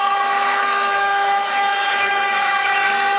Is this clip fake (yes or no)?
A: yes